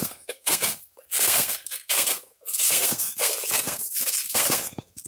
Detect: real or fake fake